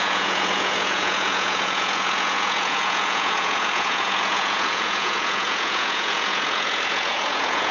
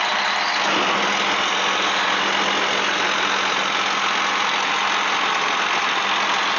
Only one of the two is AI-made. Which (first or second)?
first